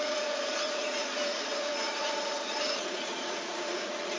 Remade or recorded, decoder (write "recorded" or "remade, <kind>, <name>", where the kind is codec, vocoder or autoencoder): remade, vocoder, Vocos